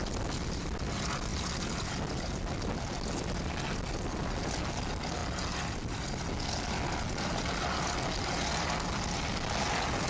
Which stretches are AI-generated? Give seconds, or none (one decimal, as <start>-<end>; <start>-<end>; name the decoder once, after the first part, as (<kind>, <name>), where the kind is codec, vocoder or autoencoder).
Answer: none